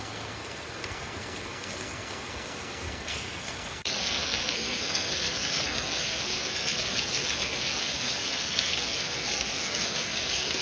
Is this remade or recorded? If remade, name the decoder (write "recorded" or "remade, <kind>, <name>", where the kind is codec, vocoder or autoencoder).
remade, codec, SNAC